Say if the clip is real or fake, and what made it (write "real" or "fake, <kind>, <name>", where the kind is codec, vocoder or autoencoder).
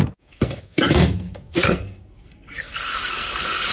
fake, codec, SNAC